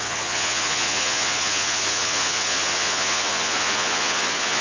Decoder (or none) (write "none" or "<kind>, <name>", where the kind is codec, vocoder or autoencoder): vocoder, Vocos